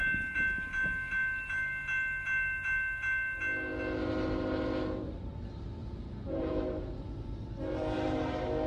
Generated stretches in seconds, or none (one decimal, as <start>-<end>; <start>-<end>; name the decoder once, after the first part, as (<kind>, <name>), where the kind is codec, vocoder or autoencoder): 5.8-6.5 (vocoder, Vocos)